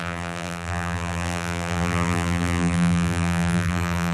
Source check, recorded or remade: remade